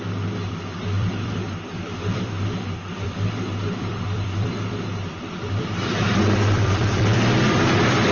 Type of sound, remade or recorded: remade